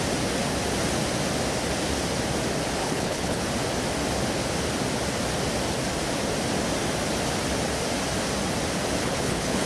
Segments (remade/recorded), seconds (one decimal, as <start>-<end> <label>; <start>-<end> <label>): 0.0-2.8 recorded; 2.8-3.4 remade; 3.4-9.0 recorded; 9.0-9.7 remade